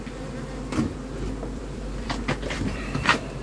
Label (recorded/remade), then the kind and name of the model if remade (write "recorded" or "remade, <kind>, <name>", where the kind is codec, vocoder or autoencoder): remade, vocoder, BigVGAN v2